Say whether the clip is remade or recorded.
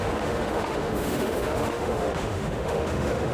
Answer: remade